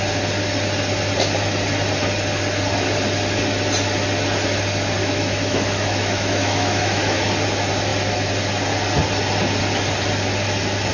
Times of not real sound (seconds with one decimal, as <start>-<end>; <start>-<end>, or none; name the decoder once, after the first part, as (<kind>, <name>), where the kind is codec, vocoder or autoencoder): 5.0-7.3 (autoencoder, DAC-VAE)